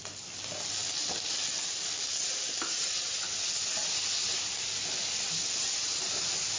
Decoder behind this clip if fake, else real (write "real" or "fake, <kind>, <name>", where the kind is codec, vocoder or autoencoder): real